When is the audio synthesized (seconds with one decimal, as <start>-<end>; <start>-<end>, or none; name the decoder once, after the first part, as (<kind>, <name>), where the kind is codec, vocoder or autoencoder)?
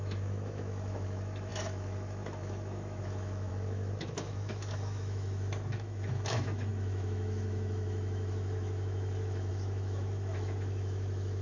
0.0-11.4 (autoencoder, DAC-VAE)